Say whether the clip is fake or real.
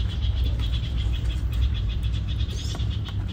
fake